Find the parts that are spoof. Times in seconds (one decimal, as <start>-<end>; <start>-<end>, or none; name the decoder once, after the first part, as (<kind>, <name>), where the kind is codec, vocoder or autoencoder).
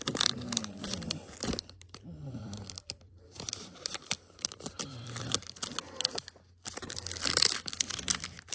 0.6-5.7 (vocoder, BigVGAN v2)